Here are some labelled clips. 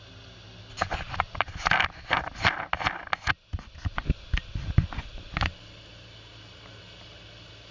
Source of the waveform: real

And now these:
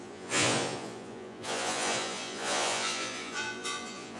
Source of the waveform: fake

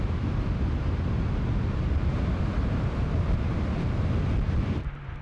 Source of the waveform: real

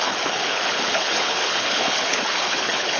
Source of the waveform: fake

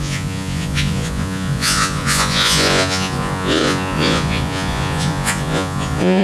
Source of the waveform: fake